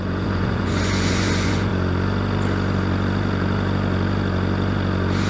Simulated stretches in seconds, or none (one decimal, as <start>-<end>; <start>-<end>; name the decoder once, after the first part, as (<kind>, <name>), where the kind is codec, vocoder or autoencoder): 0.0-1.7 (vocoder, Vocos)